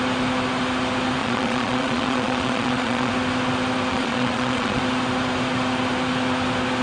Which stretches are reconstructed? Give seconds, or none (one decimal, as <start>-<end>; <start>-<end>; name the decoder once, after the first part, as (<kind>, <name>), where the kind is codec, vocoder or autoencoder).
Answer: 1.2-3.1 (vocoder, Vocos); 3.9-4.8